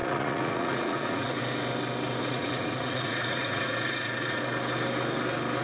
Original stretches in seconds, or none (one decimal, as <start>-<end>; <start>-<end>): 1.4-2.2; 4.4-5.6